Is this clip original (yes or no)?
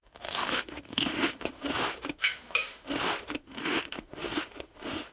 no